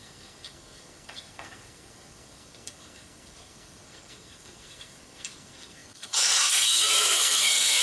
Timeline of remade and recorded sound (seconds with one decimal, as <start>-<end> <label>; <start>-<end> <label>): 0.0-7.8 remade